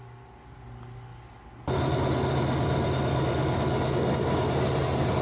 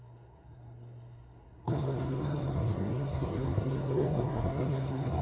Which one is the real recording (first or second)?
first